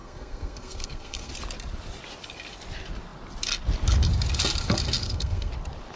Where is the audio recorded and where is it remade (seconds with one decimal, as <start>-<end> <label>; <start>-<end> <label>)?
0.0-1.3 remade; 1.3-5.0 recorded; 5.0-5.5 remade; 5.5-6.0 recorded